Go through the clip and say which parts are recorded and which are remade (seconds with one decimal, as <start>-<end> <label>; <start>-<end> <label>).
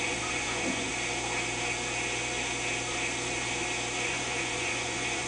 0.0-0.9 remade; 0.9-4.1 recorded; 4.1-5.3 remade